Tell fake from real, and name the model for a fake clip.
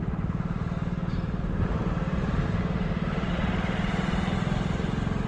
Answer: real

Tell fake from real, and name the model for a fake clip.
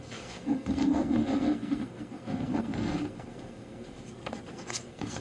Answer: fake, codec, SNAC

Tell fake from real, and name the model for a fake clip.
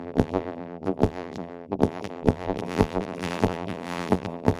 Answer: fake, vocoder, BigVGAN v2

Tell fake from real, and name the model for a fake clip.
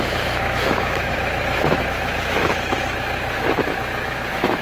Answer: fake, autoencoder, DAC-VAE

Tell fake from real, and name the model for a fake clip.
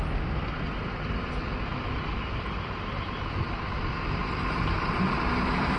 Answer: real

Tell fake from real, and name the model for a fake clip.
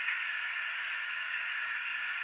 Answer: fake, codec, DAC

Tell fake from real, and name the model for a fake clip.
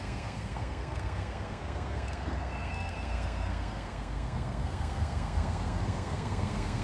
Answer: fake, codec, SNAC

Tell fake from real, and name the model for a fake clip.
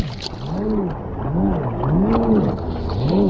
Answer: real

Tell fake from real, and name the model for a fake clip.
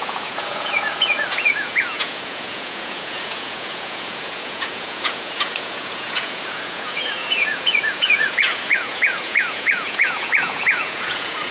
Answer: fake, vocoder, Vocos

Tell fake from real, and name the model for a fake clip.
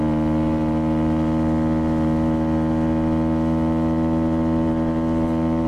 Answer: real